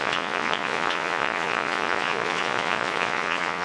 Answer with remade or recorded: remade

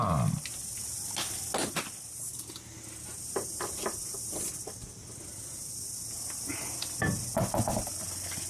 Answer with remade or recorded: recorded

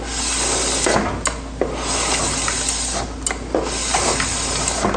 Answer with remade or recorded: recorded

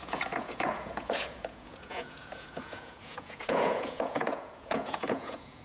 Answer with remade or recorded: remade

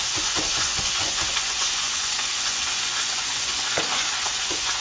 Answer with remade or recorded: remade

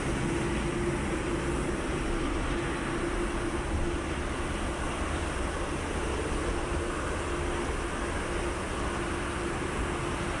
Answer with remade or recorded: recorded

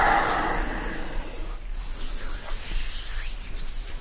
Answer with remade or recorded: recorded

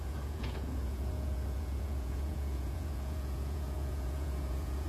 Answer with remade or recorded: remade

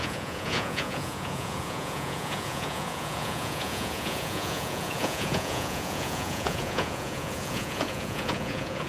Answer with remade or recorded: remade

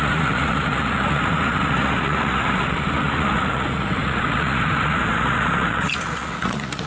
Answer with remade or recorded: remade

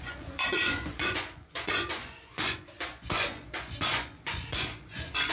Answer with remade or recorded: remade